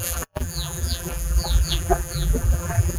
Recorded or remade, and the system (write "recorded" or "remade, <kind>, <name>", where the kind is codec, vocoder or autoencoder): remade, vocoder, BigVGAN v2